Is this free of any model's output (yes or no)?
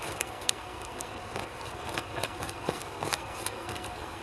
no